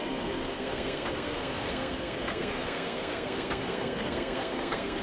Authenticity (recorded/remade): remade